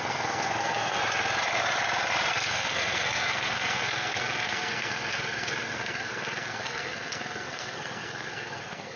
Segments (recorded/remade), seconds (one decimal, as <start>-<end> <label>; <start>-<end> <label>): 0.0-1.0 remade; 1.0-2.3 recorded; 2.3-9.0 remade